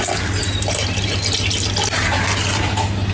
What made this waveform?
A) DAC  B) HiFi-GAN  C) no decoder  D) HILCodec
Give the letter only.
C